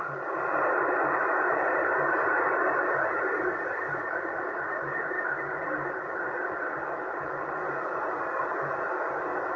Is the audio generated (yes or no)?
no